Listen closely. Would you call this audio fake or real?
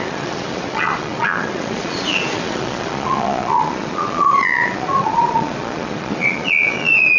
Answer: fake